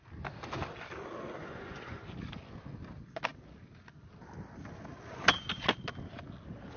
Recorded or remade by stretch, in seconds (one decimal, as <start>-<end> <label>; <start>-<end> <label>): 0.0-1.4 recorded; 1.4-2.1 remade; 2.1-6.8 recorded